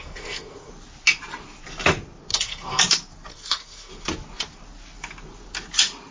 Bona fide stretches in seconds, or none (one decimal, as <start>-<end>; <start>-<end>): 0.7-2.3; 2.8-3.3; 3.9-6.1